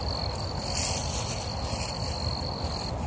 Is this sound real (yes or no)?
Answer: yes